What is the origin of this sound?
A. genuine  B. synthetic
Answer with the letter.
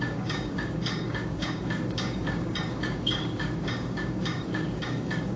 B